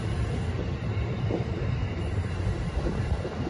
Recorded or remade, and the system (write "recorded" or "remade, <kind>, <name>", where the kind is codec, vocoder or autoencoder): remade, vocoder, BigVGAN v2